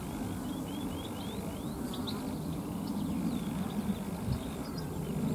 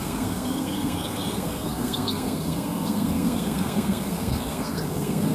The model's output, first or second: second